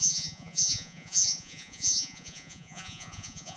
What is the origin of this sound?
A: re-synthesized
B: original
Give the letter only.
A